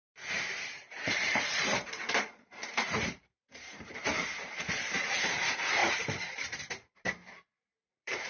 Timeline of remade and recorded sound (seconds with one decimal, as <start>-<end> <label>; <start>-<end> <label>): 0.0-5.8 remade; 5.8-6.9 recorded; 6.9-8.3 remade